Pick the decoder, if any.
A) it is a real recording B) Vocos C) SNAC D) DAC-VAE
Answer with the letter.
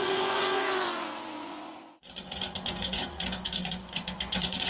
B